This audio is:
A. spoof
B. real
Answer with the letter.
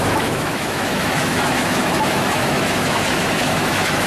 A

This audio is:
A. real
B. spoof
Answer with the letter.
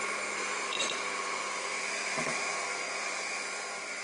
B